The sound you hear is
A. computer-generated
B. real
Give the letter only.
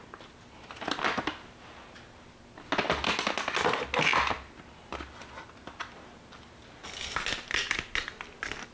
B